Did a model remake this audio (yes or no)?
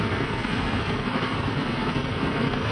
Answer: yes